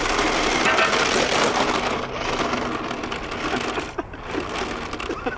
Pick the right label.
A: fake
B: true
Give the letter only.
B